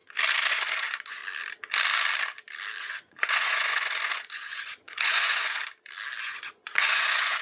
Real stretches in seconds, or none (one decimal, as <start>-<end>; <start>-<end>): 0.0-0.5; 1.2-2.8; 5.6-6.2